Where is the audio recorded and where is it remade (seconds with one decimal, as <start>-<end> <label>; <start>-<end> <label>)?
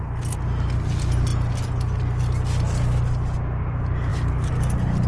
0.0-5.1 recorded